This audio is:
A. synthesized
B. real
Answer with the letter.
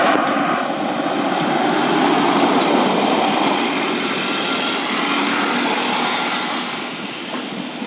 B